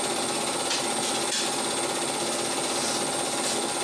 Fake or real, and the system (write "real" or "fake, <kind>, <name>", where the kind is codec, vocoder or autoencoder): real